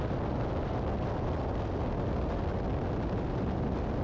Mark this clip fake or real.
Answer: real